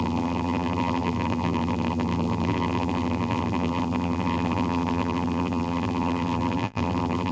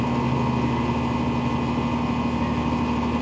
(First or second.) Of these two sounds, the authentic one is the second